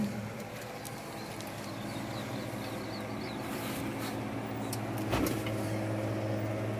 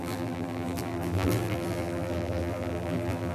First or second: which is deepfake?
second